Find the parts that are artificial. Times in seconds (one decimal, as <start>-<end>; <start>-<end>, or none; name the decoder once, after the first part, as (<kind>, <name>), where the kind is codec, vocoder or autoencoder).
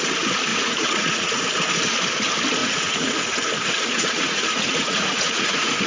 0.5-1.4 (vocoder, Vocos); 2.6-5.9